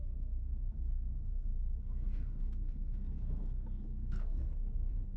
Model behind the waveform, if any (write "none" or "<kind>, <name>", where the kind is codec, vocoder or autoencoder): codec, SNAC